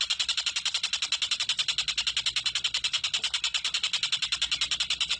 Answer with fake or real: real